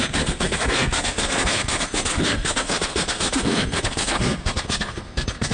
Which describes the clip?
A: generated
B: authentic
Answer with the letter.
A